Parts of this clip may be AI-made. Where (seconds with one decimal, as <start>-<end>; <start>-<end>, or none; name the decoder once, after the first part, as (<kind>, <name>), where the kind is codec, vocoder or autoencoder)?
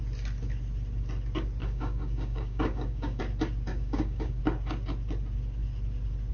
1.6-3.2 (codec, DAC); 3.7-4.4